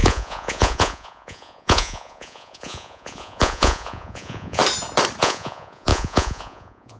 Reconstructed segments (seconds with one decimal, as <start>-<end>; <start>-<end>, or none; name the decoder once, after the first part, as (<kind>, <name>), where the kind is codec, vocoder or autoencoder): 0.0-4.6 (vocoder, Vocos); 5.2-7.0